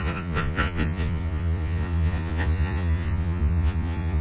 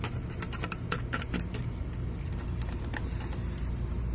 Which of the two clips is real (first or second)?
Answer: second